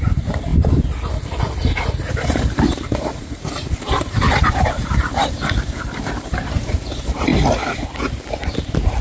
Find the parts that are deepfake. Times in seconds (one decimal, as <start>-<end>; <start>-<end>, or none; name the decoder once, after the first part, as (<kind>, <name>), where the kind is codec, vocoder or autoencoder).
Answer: 0.0-0.5 (vocoder, BigVGAN v2); 1.4-7.3